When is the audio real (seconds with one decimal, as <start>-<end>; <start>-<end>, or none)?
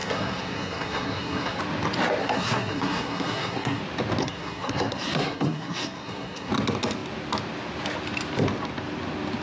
1.6-2.2; 3.8-4.2; 6.5-9.4